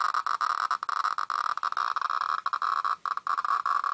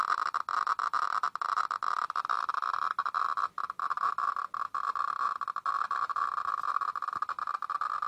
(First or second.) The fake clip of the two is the second